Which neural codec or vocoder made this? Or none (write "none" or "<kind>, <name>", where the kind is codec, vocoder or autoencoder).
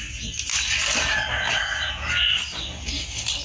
none